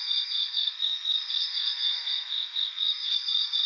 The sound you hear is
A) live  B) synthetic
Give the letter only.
B